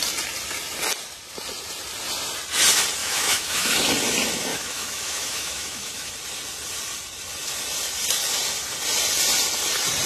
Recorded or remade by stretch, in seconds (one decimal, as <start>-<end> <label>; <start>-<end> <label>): 0.0-3.0 recorded; 3.0-3.9 remade; 3.9-4.5 recorded; 4.5-6.1 remade; 6.1-10.1 recorded